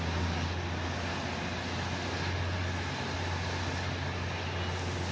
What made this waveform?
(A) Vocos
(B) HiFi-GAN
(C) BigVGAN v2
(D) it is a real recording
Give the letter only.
D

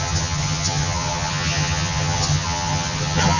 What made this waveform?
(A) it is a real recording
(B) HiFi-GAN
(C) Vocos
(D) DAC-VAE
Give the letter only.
B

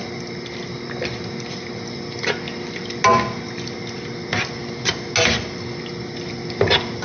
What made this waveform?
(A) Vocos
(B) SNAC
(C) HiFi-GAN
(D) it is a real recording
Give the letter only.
D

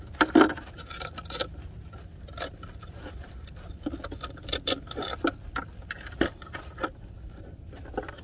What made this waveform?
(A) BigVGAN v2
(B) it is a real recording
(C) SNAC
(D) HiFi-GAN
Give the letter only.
B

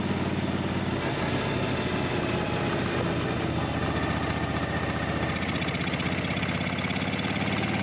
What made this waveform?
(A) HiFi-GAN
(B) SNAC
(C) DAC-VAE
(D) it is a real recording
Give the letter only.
D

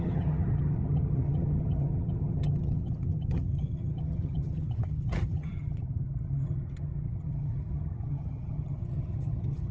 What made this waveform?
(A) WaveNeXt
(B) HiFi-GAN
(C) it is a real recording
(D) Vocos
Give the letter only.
B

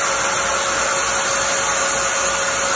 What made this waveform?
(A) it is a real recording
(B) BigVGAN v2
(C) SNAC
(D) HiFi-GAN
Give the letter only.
A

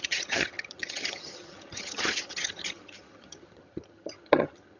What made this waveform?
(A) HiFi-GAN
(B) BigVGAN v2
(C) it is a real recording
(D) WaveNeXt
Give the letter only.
A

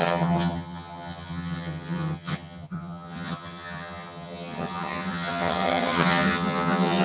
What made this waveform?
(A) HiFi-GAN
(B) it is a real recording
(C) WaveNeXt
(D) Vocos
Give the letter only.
A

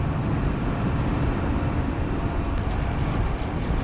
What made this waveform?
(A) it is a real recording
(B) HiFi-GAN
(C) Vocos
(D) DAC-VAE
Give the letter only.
A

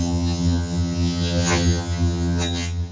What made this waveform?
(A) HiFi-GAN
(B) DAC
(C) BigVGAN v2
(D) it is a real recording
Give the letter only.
A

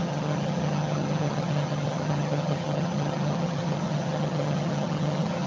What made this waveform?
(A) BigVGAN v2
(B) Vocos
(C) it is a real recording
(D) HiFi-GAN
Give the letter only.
D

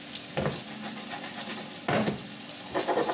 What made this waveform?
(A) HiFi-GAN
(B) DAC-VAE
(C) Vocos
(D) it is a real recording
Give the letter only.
D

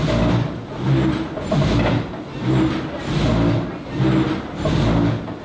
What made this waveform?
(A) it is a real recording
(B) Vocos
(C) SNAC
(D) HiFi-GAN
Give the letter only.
A